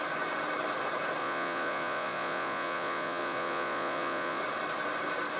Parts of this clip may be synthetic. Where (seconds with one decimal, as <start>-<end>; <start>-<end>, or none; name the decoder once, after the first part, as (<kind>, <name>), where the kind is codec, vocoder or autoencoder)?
1.2-4.4 (vocoder, Vocos)